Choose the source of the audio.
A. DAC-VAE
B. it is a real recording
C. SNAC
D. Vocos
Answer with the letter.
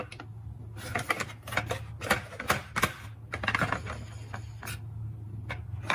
B